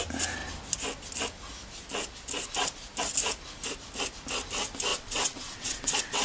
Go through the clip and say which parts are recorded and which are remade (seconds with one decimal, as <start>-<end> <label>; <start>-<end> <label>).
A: 0.0-4.9 recorded; 4.9-6.2 remade